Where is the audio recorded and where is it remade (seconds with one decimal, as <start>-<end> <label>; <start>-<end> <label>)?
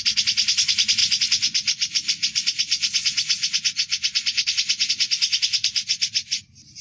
0.0-6.8 remade